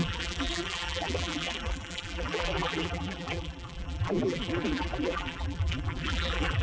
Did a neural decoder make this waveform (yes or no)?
yes